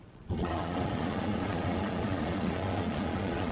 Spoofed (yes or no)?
yes